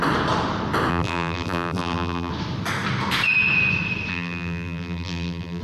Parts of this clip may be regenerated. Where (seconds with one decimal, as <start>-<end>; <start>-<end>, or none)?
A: 0.9-2.3; 4.1-5.6